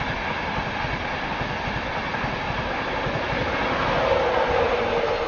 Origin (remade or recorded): recorded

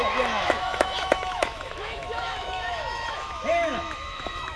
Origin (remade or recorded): remade